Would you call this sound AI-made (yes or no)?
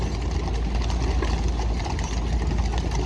no